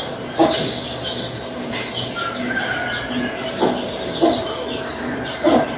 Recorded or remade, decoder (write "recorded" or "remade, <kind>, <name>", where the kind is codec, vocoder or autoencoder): recorded